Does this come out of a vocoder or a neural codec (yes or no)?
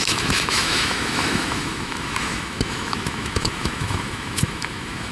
yes